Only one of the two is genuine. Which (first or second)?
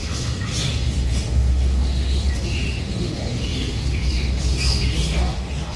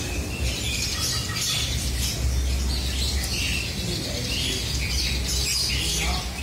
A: second